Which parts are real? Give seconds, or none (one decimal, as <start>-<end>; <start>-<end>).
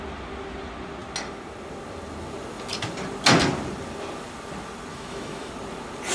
0.0-4.9; 5.5-6.1